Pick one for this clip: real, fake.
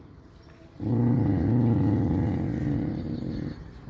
real